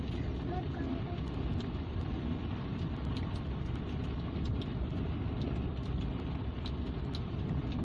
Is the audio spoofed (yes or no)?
no